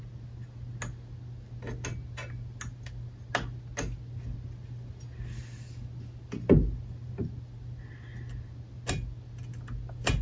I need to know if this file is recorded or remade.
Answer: recorded